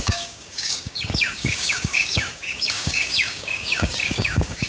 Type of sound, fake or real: fake